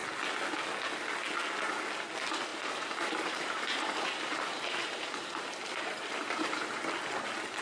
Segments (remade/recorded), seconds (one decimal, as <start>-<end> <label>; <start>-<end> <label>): 0.0-2.5 recorded; 2.5-6.9 remade; 6.9-7.6 recorded